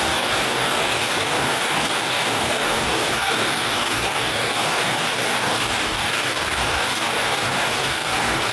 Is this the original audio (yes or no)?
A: no